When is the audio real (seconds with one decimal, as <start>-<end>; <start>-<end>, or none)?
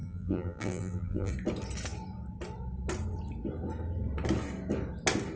1.3-5.4